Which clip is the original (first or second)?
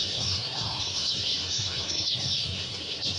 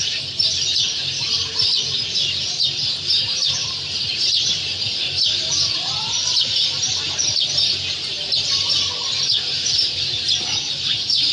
second